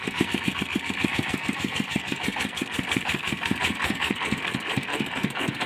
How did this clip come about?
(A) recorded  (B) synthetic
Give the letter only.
B